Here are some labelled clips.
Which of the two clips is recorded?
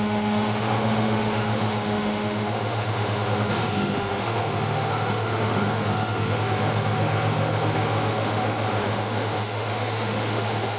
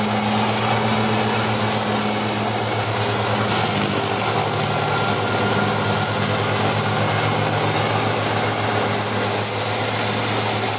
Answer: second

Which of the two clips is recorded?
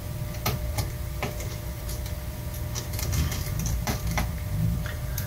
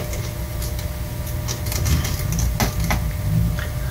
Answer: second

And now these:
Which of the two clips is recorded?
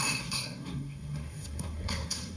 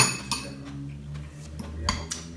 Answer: second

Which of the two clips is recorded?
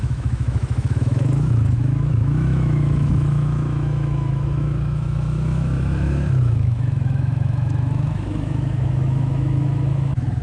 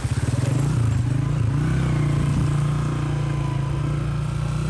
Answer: second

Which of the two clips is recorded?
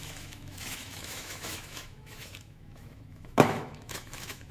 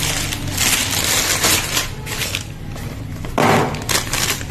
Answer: second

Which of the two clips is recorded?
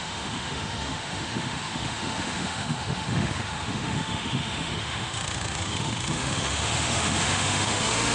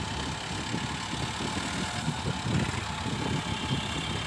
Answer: second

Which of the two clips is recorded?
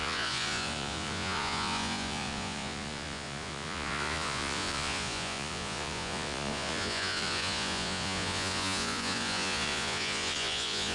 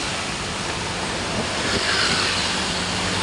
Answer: second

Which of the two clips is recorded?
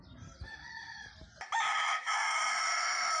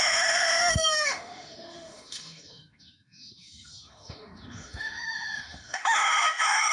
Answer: first